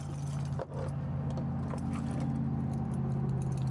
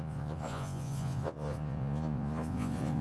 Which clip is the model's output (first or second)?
second